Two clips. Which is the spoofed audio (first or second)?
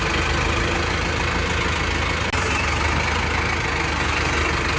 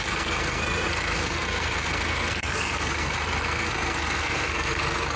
second